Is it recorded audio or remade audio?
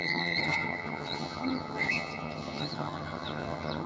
remade